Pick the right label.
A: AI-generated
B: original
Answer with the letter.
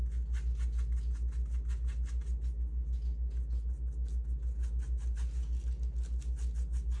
B